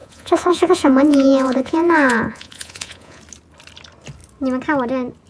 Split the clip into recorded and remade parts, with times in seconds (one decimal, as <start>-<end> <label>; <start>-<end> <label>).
0.0-3.2 remade; 3.2-5.3 recorded